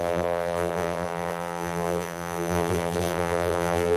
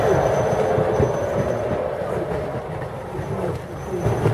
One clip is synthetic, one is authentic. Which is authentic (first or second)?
second